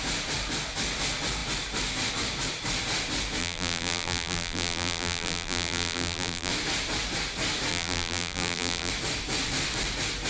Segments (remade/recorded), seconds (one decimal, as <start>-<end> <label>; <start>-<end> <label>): 0.0-3.4 recorded; 3.4-6.5 remade; 6.5-7.7 recorded; 7.7-8.9 remade; 8.9-10.3 recorded